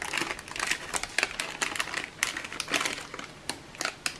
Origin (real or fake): real